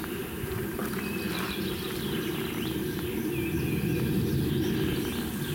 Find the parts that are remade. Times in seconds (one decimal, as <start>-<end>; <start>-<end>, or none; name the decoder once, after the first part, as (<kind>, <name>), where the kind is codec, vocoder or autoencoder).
none